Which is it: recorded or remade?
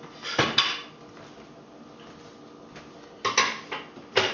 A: recorded